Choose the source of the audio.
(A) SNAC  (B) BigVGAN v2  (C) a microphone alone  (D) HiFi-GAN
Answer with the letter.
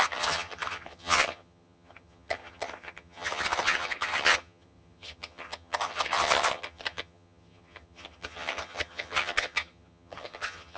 D